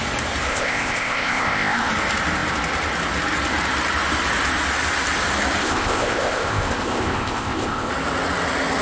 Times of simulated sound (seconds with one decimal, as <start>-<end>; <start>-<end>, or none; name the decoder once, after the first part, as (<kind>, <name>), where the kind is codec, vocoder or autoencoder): 0.5-1.9 (codec, ZipCodec); 5.6-7.9